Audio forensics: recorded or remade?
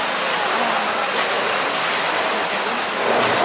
recorded